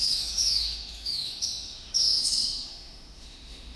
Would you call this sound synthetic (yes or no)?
yes